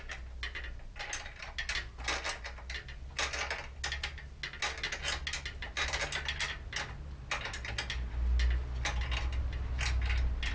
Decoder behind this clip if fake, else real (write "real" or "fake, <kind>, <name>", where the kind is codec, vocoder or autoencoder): real